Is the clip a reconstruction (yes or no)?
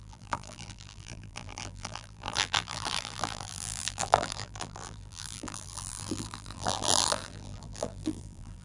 yes